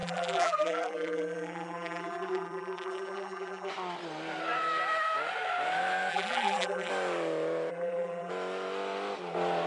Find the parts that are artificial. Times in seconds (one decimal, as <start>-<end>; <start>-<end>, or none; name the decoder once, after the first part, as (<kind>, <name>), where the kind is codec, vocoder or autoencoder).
0.0-3.7 (vocoder, BigVGAN v2); 6.1-6.9; 7.7-8.3